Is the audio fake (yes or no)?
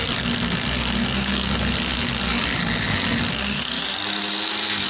no